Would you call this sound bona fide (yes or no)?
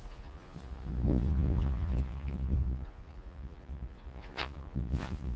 no